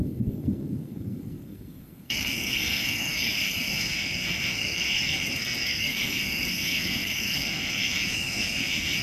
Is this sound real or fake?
fake